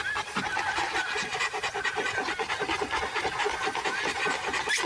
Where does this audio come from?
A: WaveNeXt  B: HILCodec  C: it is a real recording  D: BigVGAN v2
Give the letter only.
C